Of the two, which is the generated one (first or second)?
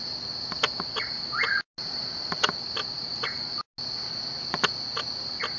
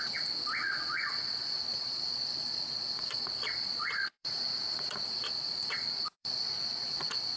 second